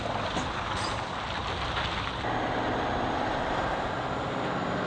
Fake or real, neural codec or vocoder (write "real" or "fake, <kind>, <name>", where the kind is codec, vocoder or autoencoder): real